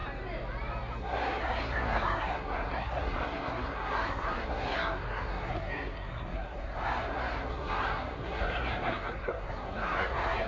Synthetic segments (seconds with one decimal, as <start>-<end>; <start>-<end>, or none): 1.0-10.5